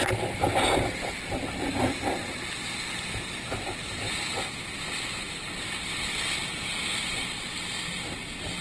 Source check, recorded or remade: recorded